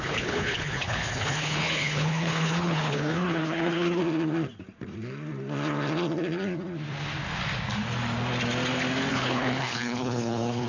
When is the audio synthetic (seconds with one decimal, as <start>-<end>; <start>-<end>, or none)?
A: 0.0-4.0; 9.1-10.7